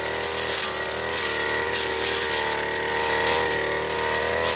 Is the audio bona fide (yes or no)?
yes